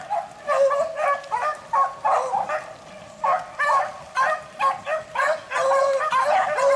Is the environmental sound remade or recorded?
recorded